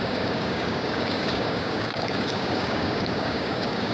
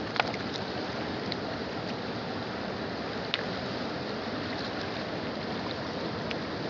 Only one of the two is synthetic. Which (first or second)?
first